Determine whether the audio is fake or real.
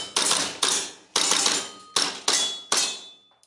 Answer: real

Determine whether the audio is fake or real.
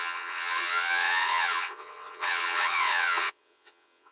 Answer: fake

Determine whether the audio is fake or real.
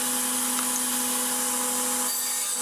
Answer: real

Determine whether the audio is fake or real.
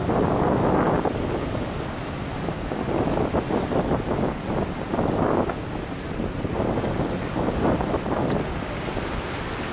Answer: real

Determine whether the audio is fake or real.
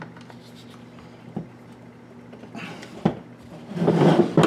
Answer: real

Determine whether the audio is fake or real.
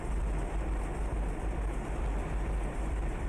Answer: real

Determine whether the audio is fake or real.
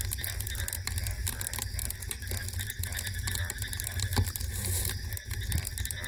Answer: real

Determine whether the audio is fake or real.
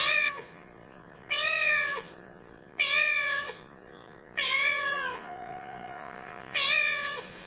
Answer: fake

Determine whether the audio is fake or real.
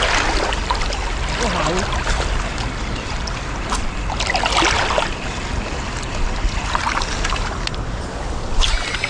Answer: real